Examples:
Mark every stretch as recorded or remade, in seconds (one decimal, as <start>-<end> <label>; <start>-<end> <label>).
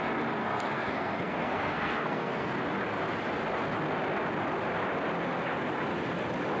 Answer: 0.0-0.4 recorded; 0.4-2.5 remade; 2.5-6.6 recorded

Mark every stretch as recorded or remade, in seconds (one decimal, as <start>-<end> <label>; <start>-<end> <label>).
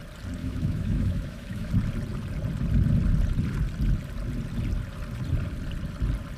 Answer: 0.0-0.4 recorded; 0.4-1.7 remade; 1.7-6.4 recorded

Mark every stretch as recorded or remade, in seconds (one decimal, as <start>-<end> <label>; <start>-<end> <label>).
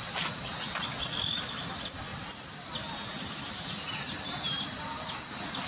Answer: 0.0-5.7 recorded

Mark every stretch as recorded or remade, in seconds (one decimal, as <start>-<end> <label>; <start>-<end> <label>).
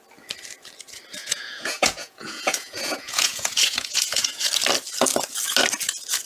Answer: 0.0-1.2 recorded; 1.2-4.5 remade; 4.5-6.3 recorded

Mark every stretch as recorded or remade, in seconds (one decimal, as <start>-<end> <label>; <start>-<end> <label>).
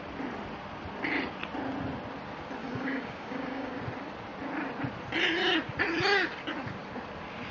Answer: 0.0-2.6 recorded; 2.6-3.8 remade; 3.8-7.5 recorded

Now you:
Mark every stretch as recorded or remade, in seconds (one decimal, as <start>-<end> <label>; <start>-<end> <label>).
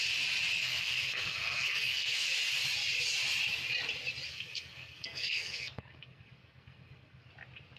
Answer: 0.0-0.6 recorded; 0.6-2.3 remade; 2.3-4.3 recorded; 4.3-7.3 remade; 7.3-7.8 recorded